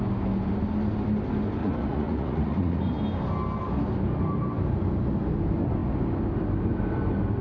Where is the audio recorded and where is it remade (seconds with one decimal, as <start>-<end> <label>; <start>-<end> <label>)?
0.0-1.6 recorded; 1.6-3.0 remade; 3.0-7.4 recorded